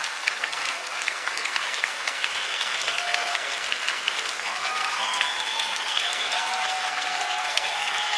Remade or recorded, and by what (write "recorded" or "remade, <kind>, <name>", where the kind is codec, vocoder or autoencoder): remade, codec, SNAC